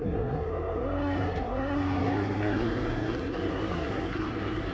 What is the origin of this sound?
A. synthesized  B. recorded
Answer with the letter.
A